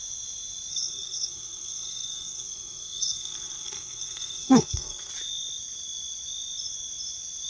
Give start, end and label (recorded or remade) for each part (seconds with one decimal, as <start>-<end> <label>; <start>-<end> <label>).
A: 0.0-0.7 recorded; 0.7-5.1 remade; 5.1-7.5 recorded